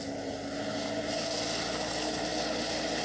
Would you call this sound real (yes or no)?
yes